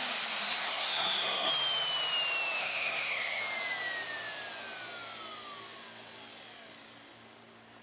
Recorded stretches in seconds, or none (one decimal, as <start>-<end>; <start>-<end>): 0.0-0.5; 1.5-2.6; 3.4-7.8